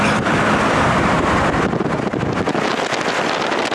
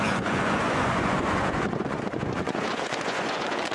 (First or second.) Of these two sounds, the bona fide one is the first